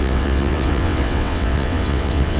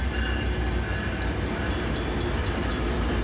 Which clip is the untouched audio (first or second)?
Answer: second